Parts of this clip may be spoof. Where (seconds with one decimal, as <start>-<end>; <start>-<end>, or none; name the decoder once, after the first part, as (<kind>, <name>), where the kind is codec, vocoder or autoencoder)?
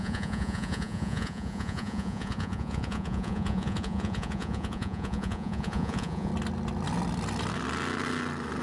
0.0-6.3 (vocoder, Vocos)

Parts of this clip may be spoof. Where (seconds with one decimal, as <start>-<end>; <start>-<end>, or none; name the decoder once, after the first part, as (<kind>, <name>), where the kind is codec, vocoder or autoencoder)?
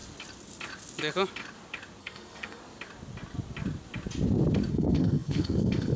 2.0-2.6 (codec, SNAC); 4.7-6.0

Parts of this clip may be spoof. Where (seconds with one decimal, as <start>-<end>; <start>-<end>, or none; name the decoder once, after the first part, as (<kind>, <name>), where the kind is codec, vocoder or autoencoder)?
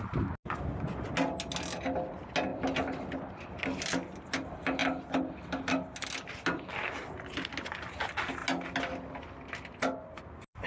none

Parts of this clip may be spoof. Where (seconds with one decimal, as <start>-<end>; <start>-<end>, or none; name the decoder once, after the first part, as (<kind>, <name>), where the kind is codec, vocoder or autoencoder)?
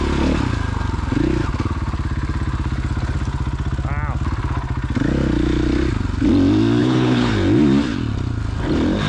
6.8-7.3 (codec, HILCodec)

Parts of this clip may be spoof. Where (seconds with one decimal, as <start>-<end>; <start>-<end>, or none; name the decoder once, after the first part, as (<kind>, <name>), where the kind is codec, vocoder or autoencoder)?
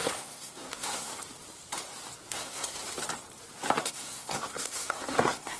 0.0-1.1 (codec, SNAC); 2.3-2.8; 3.8-5.6